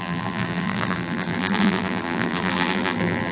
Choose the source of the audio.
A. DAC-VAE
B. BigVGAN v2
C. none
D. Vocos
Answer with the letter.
B